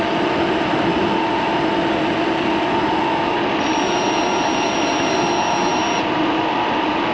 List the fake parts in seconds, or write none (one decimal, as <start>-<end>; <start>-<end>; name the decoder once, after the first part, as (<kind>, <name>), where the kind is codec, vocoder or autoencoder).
none